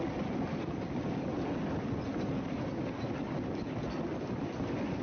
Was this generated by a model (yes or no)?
no